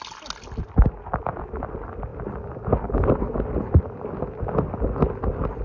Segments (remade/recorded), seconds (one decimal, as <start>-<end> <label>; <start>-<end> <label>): 0.0-5.6 recorded